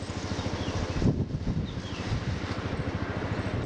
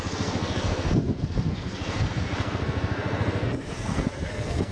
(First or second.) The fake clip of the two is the second